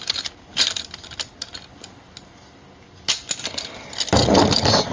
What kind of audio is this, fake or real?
real